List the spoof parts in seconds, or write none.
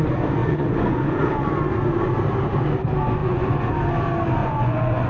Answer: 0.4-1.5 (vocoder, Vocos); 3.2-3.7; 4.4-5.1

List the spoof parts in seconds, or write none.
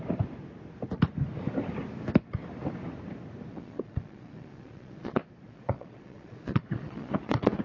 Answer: 3.5-7.6 (vocoder, Vocos)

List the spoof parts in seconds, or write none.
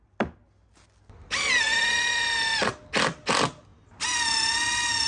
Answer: none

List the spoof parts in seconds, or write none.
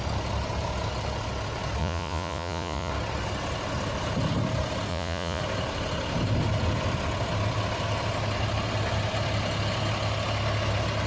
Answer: 1.8-2.9 (vocoder, Vocos); 4.9-5.4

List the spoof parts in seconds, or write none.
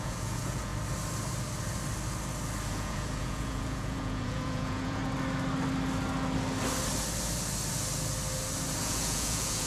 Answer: 0.0-0.7 (vocoder, Vocos); 2.7-5.0; 8.8-9.7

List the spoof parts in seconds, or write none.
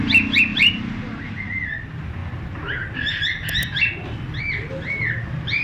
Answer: none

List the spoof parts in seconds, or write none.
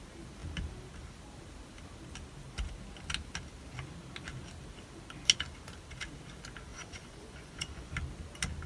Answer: 6.7-7.9 (vocoder, Vocos)